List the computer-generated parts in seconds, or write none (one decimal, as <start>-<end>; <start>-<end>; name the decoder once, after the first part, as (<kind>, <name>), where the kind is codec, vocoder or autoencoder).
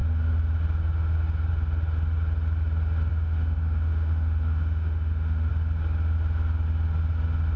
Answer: 3.1-5.5 (autoencoder, DAC-VAE)